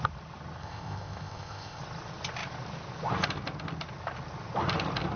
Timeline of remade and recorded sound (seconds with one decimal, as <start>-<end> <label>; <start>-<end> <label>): 0.0-0.6 recorded; 0.6-1.8 remade; 1.8-5.2 recorded